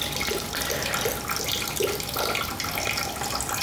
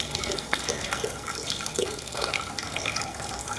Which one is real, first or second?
first